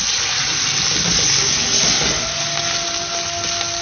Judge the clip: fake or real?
real